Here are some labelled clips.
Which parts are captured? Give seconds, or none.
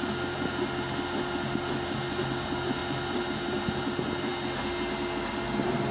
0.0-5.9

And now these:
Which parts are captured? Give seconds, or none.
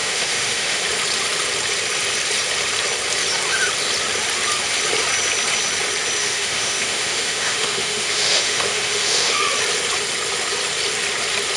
0.8-6.2; 9.5-11.6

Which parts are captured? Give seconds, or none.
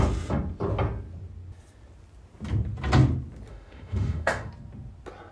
0.0-3.5; 4.5-5.3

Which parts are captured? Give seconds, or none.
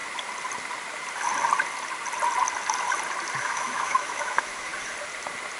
0.0-3.4; 4.7-5.6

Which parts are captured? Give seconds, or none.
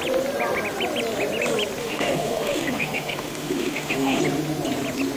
0.0-1.8; 4.2-5.2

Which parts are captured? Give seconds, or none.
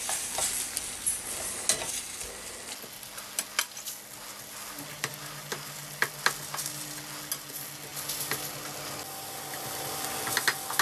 0.0-10.8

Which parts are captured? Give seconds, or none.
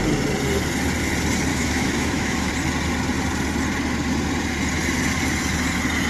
0.0-1.5; 2.5-6.1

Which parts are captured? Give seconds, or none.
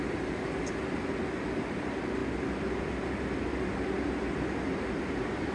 0.0-5.5